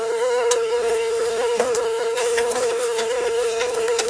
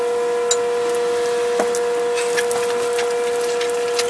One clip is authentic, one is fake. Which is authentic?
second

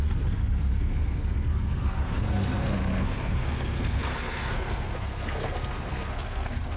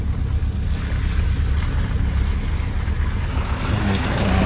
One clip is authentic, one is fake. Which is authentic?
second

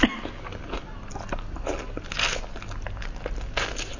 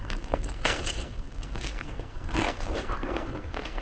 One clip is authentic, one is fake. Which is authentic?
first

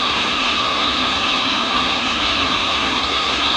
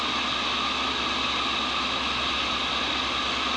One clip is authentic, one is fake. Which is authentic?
second